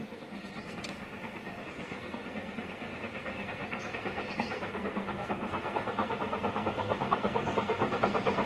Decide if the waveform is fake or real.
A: fake